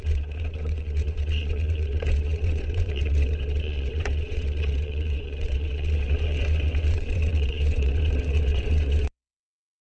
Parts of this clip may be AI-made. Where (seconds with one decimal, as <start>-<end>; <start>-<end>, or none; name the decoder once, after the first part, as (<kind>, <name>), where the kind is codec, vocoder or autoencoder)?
0.0-9.8 (vocoder, WaveNeXt)